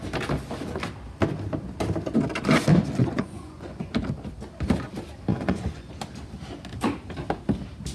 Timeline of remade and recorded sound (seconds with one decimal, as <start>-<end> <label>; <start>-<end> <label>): 0.0-3.0 recorded; 3.0-3.9 remade; 3.9-5.3 recorded; 5.3-5.9 remade; 5.9-7.9 recorded